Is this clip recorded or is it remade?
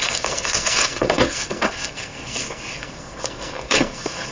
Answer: remade